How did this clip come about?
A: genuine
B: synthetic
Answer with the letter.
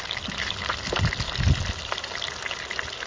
A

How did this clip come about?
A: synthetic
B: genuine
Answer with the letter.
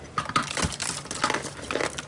B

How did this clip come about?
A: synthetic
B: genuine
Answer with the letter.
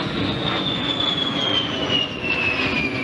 A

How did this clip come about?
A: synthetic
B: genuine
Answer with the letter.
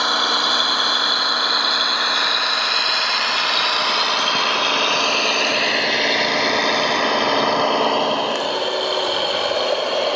B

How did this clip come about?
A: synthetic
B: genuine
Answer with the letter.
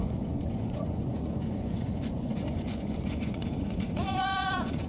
A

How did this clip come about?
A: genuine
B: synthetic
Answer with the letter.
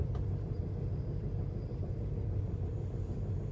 A